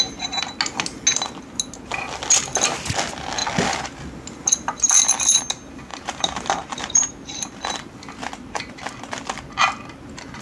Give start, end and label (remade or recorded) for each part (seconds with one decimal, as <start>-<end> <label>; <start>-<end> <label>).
0.0-5.9 recorded; 5.9-7.1 remade; 7.1-10.4 recorded